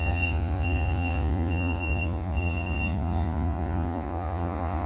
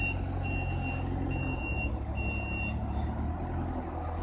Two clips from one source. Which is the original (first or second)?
second